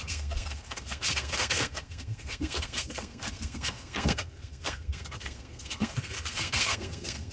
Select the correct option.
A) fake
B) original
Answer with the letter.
A